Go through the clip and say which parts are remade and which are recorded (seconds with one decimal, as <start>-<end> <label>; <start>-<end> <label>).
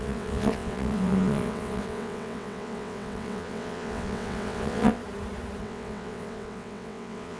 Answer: 0.0-5.0 remade; 5.0-5.6 recorded; 5.6-7.4 remade